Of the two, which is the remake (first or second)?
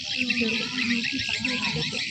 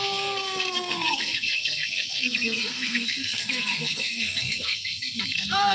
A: second